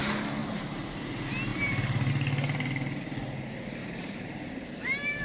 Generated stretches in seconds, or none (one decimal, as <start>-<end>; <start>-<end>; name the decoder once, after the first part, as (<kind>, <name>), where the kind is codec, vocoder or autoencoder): 0.4-1.0 (vocoder, BigVGAN v2); 1.5-2.1; 3.8-5.2